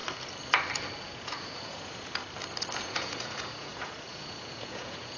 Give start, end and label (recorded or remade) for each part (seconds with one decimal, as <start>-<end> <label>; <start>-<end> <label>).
0.0-1.0 recorded; 1.0-2.2 remade; 2.2-2.8 recorded; 2.8-5.2 remade